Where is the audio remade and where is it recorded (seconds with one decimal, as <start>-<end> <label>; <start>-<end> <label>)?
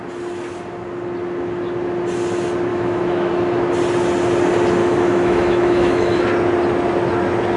0.0-2.7 recorded; 2.7-3.3 remade; 3.3-4.8 recorded; 4.8-6.2 remade; 6.2-7.6 recorded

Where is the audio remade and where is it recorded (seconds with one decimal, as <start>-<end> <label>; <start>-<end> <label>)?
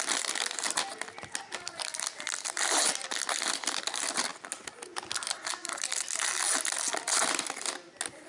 0.0-8.3 recorded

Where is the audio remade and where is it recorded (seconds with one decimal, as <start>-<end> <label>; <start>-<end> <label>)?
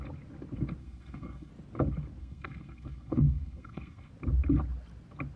0.0-0.8 recorded; 0.8-1.5 remade; 1.5-2.2 recorded; 2.2-4.1 remade; 4.1-5.4 recorded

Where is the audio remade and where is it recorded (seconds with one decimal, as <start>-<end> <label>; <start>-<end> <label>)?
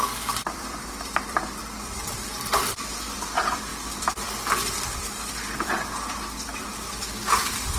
0.0-7.8 remade